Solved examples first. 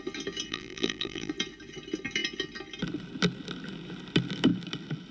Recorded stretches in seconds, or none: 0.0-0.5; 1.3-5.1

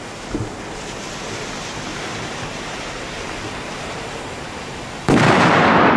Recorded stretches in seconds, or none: 0.0-1.9; 5.5-6.0